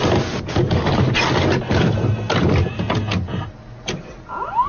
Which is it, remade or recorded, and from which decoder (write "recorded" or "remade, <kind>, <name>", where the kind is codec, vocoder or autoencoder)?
recorded